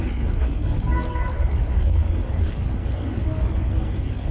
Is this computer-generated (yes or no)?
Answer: yes